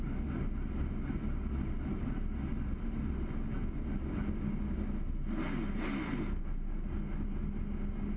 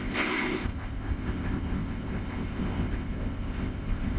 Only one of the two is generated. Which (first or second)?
second